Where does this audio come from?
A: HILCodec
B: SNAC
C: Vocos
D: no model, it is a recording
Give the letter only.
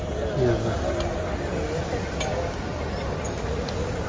D